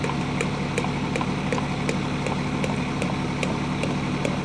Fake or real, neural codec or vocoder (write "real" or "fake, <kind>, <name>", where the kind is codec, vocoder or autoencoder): real